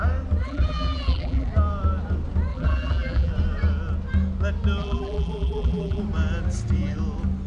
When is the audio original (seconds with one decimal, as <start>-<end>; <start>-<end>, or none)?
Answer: 0.0-0.4; 1.5-2.5; 3.3-4.8; 6.0-7.5